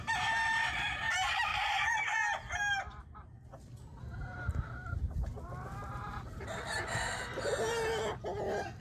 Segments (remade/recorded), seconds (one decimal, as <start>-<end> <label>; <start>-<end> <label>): 0.0-8.8 recorded